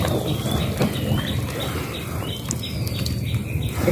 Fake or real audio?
real